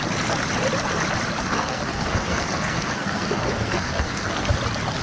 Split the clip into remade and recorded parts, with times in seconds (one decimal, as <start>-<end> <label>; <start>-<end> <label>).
0.0-1.5 recorded; 1.5-4.5 remade; 4.5-5.0 recorded